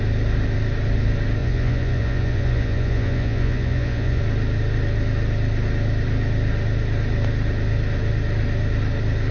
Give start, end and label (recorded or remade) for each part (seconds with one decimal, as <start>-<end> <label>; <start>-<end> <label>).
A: 0.0-1.4 recorded; 1.4-4.2 remade; 4.2-9.3 recorded